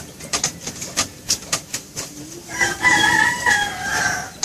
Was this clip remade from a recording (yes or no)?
yes